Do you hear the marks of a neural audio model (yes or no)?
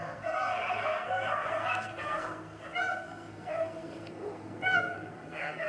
yes